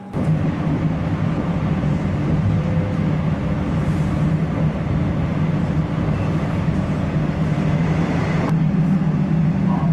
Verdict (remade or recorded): recorded